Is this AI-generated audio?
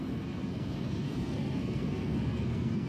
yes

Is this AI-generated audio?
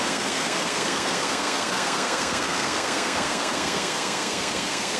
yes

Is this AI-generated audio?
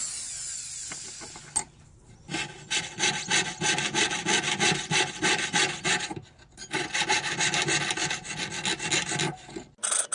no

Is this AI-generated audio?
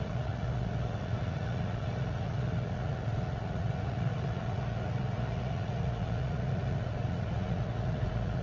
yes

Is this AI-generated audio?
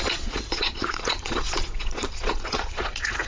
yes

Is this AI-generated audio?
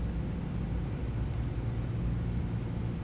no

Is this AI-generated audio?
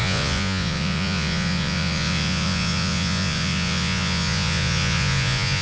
yes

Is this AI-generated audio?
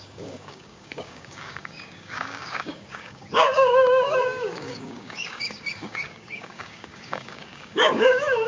yes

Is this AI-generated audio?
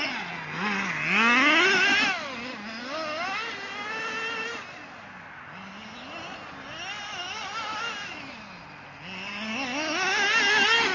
no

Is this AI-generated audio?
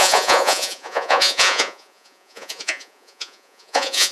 yes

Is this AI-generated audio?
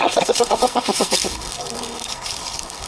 yes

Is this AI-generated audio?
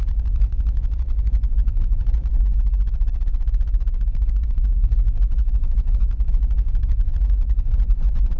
yes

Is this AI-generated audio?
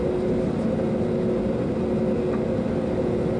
no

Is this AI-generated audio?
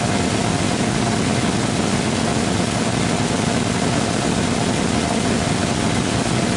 no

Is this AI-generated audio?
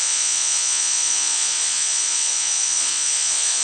yes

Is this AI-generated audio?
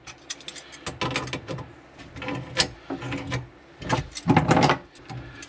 no